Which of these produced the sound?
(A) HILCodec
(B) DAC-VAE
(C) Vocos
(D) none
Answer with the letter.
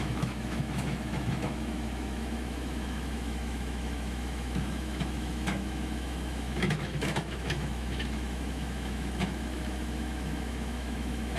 B